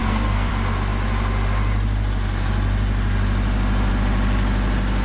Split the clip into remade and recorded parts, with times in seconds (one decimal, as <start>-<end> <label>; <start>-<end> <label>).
0.0-0.5 remade; 0.5-5.0 recorded